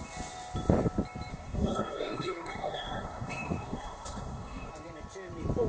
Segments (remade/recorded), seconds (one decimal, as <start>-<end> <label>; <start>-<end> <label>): 0.0-1.3 recorded; 1.3-4.7 remade; 4.7-5.7 recorded